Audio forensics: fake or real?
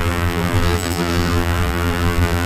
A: fake